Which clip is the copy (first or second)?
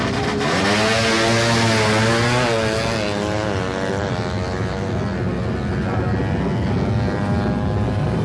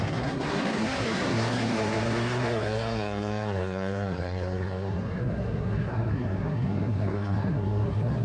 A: second